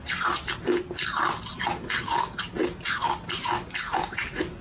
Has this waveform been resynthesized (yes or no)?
no